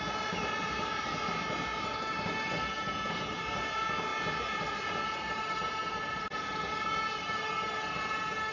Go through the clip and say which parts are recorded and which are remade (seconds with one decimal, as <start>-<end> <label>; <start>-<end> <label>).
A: 0.0-8.5 recorded